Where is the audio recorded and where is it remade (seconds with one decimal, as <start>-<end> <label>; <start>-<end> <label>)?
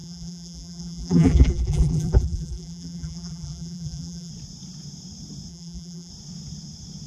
0.0-4.3 remade; 4.3-5.5 recorded; 5.5-6.1 remade; 6.1-7.1 recorded